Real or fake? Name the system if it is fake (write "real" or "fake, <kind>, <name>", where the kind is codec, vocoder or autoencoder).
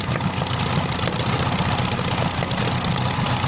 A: real